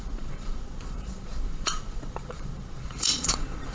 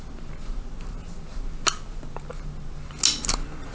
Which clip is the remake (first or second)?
first